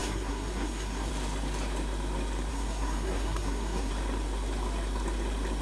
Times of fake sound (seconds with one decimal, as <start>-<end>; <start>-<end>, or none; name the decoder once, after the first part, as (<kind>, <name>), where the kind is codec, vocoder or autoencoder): 0.0-1.1 (codec, SNAC); 2.5-3.9